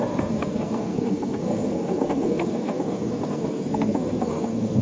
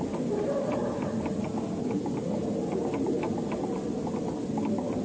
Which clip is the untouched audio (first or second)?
second